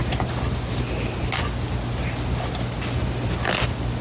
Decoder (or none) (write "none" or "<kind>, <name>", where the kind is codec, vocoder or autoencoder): none